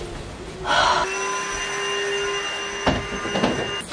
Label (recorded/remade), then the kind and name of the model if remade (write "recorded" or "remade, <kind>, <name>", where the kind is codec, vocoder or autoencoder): recorded